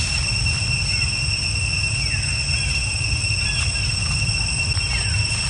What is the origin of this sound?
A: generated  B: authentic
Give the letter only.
B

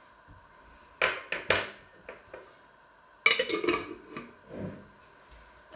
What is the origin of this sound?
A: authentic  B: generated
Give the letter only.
A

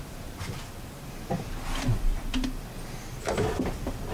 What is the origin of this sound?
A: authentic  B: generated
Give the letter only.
B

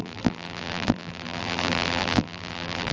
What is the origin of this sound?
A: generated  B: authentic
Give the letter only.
A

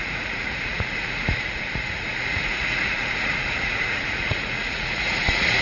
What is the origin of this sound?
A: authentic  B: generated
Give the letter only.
B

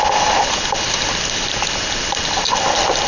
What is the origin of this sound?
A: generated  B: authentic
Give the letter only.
B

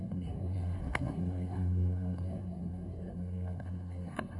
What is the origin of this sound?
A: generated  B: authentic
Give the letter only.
A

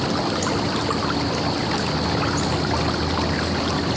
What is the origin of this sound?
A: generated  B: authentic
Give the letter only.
B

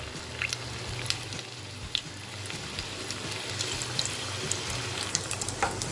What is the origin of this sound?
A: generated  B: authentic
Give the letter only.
B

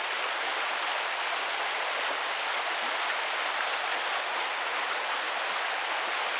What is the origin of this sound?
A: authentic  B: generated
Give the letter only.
A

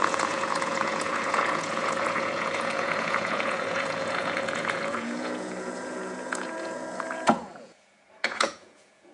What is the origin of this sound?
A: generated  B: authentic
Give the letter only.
A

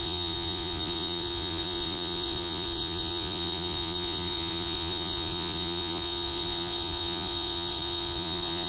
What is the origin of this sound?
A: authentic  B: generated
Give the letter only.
B